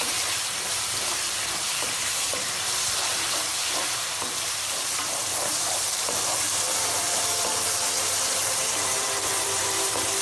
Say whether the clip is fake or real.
fake